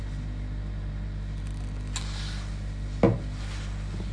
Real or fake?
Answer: real